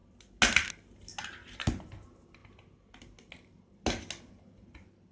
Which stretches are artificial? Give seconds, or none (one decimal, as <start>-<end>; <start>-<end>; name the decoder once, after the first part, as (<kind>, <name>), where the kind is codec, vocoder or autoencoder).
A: none